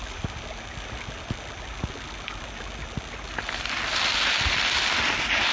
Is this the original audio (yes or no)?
yes